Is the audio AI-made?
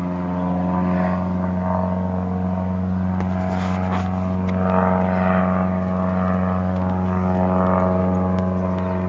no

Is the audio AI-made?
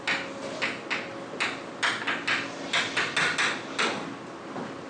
no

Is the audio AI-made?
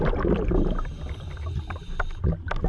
no